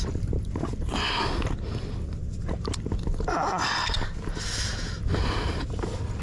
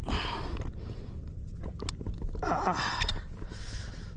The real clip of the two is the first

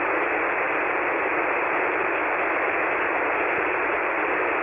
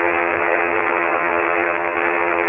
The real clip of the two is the first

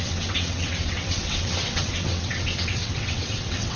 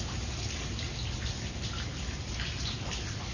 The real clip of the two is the second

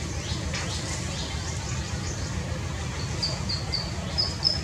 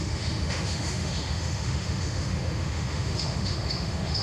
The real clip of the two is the first